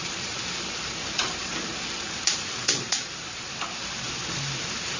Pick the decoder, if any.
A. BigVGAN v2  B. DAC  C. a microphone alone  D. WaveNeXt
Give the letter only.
A